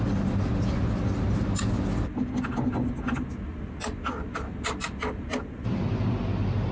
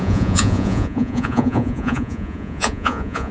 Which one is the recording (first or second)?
first